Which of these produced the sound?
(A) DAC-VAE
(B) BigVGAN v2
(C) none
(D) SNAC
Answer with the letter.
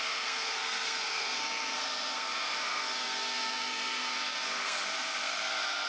D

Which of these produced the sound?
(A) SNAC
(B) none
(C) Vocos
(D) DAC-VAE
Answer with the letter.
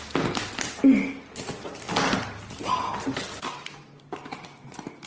B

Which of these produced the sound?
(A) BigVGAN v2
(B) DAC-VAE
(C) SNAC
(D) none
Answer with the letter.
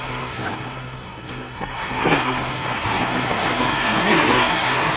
C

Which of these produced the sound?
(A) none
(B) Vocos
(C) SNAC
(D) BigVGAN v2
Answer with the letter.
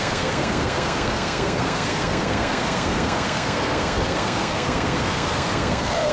C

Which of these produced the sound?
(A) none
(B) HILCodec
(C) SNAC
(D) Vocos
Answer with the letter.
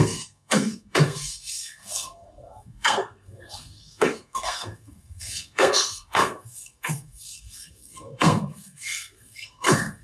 C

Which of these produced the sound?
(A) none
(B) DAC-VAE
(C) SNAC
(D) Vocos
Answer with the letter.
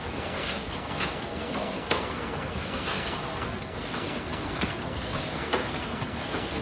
C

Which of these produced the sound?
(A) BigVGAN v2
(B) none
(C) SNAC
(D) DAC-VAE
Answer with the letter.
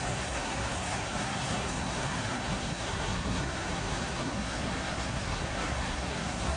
C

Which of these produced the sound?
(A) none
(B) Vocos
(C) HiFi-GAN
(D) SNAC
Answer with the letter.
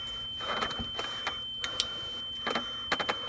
A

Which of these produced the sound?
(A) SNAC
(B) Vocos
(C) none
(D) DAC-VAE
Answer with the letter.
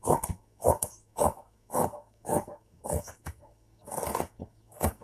A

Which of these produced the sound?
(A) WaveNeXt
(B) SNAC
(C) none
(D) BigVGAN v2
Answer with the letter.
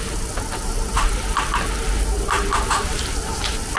C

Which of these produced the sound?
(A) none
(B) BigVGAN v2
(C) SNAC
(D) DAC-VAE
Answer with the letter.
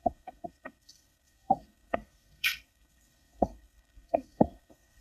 C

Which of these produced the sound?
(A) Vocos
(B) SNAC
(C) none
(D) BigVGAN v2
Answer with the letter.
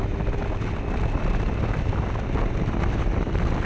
C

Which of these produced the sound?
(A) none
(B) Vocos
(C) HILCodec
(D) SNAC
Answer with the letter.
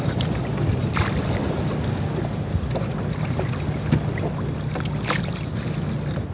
A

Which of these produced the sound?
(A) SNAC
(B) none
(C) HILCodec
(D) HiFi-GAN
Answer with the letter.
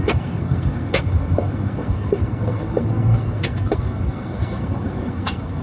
A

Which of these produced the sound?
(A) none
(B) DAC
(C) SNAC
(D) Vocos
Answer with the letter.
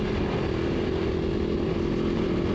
A